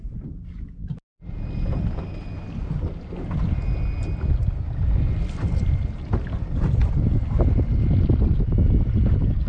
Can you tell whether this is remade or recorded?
recorded